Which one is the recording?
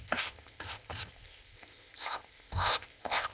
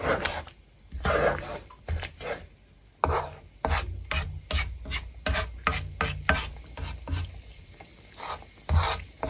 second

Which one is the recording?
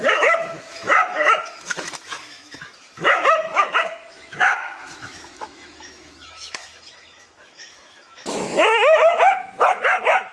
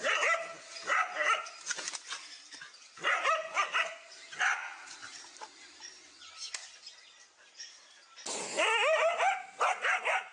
second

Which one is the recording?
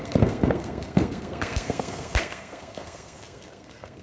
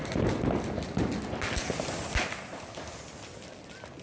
second